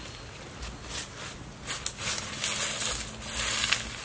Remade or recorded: recorded